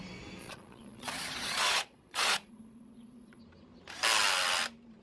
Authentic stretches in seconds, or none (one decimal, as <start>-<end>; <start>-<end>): 0.0-0.4; 3.4-5.0